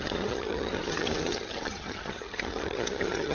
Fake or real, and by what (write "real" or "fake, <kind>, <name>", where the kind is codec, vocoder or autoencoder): fake, vocoder, HiFi-GAN